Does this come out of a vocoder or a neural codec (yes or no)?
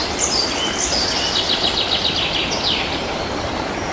no